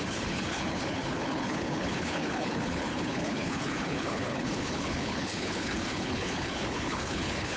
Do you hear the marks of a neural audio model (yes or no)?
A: yes